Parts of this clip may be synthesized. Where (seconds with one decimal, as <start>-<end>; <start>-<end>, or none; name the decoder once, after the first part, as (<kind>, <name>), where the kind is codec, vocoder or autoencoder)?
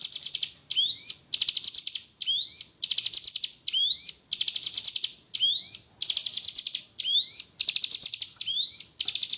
none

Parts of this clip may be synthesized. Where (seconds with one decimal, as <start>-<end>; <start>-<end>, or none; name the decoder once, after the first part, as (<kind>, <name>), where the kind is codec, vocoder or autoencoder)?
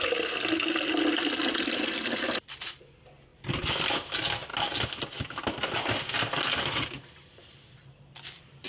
none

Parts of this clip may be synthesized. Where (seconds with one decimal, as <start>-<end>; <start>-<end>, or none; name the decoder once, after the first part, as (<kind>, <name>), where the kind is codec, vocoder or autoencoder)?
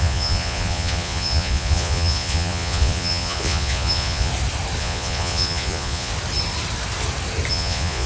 0.0-4.3 (vocoder, Vocos); 4.8-6.1; 7.5-8.1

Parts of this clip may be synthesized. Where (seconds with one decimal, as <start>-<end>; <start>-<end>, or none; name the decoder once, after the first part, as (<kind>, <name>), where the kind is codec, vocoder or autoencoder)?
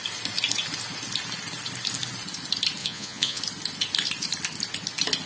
2.8-3.4 (vocoder, Vocos)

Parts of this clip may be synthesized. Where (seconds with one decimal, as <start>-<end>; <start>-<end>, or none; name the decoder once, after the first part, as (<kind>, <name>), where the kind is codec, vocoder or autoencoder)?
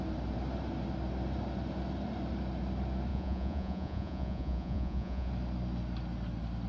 3.1-5.3 (vocoder, Vocos)